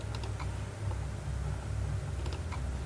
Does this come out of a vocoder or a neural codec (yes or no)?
no